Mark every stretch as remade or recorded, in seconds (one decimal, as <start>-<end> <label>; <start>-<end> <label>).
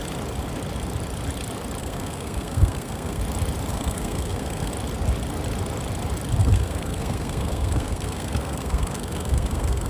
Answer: 0.0-1.8 recorded; 1.8-3.2 remade; 3.2-3.7 recorded; 3.7-4.7 remade; 4.7-6.4 recorded; 6.4-9.9 remade